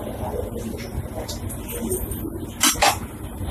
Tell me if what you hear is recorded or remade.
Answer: recorded